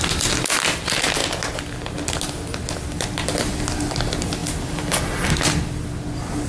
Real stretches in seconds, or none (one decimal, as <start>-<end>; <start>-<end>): 0.0-6.5